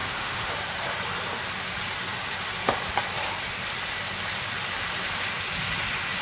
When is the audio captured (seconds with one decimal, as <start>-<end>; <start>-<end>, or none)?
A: 0.5-6.2